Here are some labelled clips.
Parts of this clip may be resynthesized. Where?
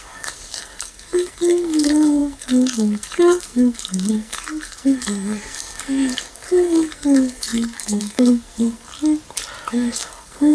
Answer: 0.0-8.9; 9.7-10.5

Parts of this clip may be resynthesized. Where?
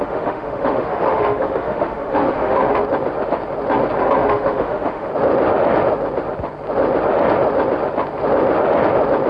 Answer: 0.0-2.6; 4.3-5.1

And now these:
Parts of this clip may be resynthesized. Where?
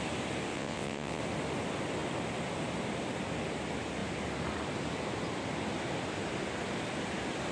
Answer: 0.5-1.2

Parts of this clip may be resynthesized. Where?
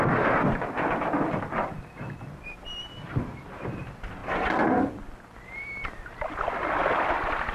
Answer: 0.0-7.5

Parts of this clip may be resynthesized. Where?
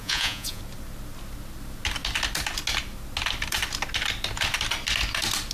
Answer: 0.0-0.6